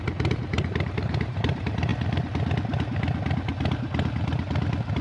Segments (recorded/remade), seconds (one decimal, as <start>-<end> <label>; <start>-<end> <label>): 0.0-1.9 remade; 1.9-5.0 recorded